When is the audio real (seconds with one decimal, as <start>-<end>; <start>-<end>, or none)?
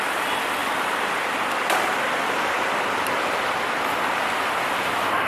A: 0.0-0.6; 3.8-5.3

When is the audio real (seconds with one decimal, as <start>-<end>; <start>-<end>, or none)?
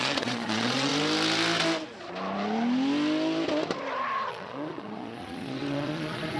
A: 0.9-4.3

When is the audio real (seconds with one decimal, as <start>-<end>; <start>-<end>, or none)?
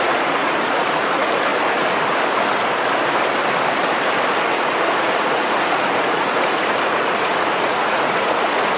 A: 1.5-4.5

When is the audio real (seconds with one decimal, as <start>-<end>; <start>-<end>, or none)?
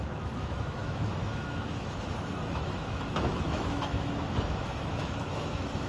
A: none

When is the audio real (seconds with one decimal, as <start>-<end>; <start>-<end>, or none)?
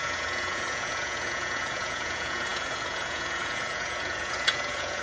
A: none